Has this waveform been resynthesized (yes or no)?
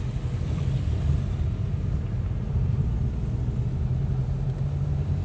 no